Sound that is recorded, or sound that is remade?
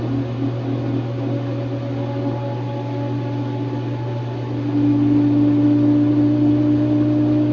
recorded